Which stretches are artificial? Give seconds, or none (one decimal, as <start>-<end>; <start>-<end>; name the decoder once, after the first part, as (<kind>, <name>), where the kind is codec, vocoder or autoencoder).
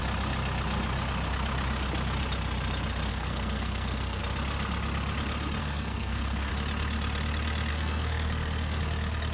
3.1-4.2 (codec, SNAC); 5.6-6.5; 7.7-8.8